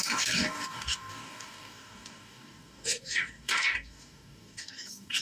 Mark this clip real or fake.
fake